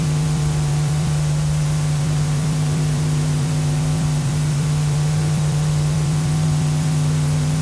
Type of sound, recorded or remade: remade